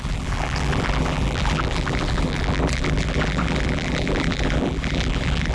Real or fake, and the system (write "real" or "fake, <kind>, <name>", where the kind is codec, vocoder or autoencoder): fake, vocoder, BigVGAN v2